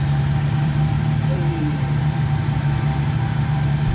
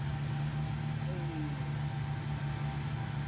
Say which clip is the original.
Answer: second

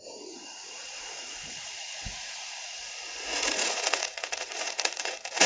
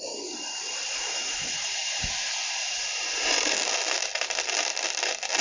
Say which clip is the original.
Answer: second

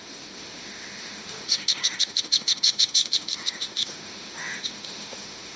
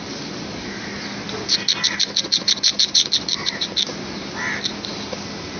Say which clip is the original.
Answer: second